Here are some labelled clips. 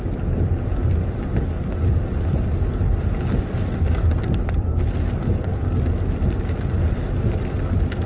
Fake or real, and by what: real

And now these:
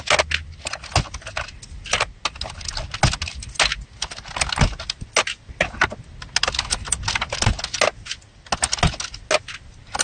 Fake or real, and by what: real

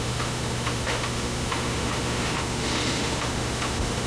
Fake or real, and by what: fake, autoencoder, DAC-VAE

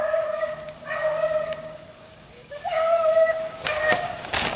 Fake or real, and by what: fake, codec, DAC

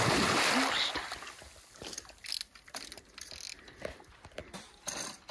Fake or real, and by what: real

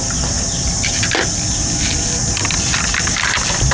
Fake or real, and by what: real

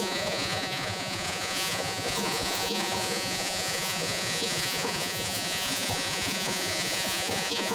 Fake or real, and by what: fake, vocoder, Vocos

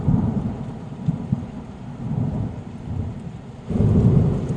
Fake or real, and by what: fake, vocoder, BigVGAN v2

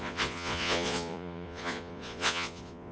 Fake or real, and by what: fake, vocoder, Vocos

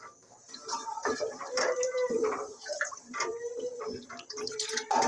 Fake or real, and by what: fake, vocoder, BigVGAN v2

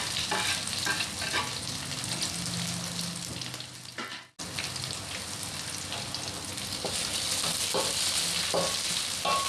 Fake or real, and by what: real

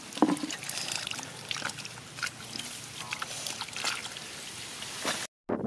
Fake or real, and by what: real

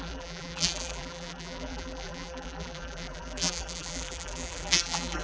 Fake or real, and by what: fake, vocoder, BigVGAN v2